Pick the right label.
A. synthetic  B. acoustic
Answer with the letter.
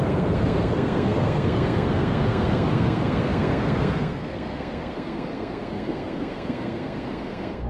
A